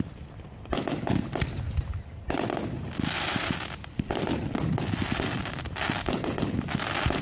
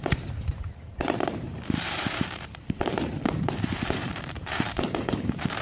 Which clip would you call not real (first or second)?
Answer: second